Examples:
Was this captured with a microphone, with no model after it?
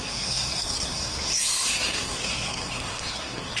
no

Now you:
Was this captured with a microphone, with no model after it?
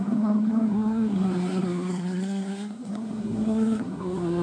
no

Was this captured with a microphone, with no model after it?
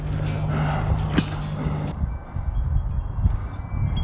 yes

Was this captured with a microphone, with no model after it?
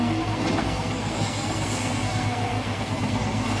no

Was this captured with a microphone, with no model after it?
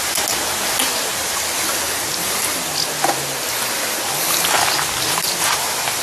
yes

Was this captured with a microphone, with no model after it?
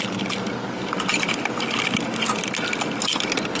yes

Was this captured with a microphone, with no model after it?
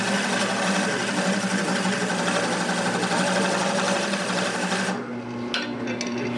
yes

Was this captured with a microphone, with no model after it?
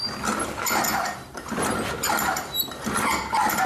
yes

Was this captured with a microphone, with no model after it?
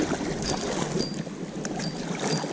yes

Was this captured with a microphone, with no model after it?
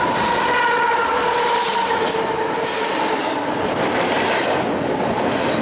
yes